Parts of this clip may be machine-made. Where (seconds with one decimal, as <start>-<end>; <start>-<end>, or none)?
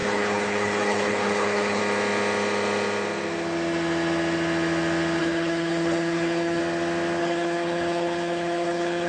0.0-1.8; 5.2-6.6; 7.2-9.1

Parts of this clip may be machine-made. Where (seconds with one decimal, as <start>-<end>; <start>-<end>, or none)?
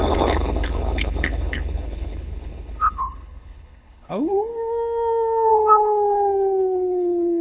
0.0-4.5; 5.5-7.4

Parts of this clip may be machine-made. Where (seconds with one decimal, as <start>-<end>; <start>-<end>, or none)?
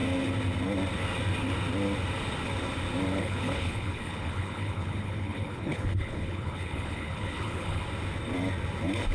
3.1-7.8